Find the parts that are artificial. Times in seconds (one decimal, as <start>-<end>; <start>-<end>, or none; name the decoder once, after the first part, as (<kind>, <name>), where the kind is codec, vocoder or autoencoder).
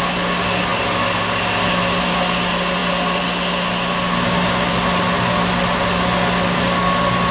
none